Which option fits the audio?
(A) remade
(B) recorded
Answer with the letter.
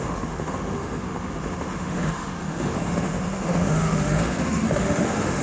A